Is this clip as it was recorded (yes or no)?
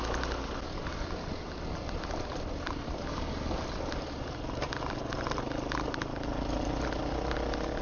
yes